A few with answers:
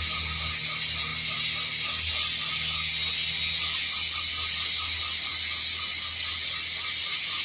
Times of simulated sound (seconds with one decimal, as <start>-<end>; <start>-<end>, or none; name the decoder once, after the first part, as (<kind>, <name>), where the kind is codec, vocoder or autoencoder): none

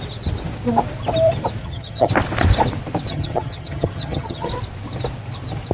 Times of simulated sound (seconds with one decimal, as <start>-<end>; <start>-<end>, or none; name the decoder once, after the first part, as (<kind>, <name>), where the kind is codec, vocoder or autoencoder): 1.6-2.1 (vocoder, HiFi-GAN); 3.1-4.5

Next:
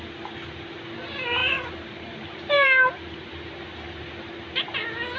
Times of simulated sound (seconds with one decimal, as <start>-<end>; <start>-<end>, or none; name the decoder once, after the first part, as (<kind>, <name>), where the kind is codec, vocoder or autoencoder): 1.4-4.1 (vocoder, BigVGAN v2)

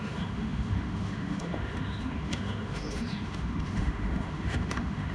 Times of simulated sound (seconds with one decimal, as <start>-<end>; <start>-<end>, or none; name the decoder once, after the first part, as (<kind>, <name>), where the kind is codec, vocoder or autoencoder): 0.0-5.1 (autoencoder, DAC-VAE)

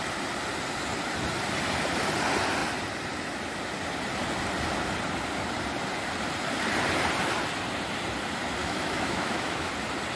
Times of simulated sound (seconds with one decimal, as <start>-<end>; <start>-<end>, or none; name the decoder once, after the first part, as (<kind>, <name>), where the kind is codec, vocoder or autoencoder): 8.6-9.7 (autoencoder, DAC-VAE)

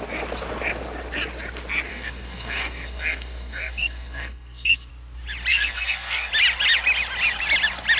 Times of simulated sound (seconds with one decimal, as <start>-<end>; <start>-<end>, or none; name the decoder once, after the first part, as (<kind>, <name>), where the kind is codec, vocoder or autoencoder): 1.9-4.9 (codec, SNAC); 5.5-6.3

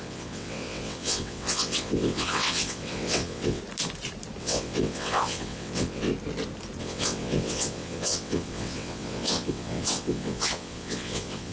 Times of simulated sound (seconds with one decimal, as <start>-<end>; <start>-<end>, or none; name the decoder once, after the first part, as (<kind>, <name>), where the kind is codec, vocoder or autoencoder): 0.0-3.6 (vocoder, WaveNeXt); 4.4-6.1; 6.8-11.5